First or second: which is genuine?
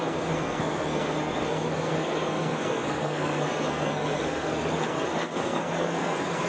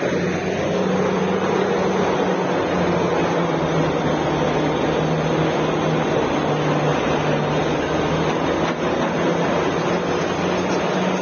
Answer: second